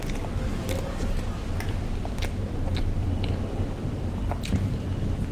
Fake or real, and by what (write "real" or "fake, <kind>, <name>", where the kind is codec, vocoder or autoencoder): real